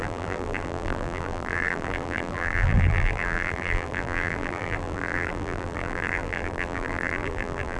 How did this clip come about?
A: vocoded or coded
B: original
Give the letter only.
A